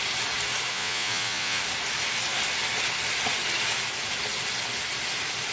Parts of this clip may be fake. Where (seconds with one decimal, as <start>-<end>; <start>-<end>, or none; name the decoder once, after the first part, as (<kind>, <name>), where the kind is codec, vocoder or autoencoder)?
0.7-1.6 (vocoder, Vocos)